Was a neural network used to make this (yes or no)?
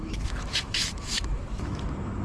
yes